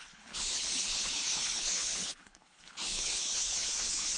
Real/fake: fake